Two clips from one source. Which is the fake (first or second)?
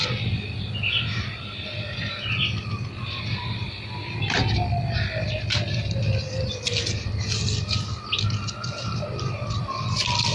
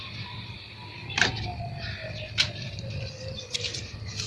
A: second